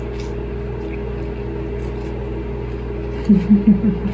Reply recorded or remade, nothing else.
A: recorded